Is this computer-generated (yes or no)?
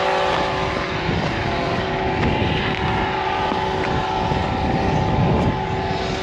no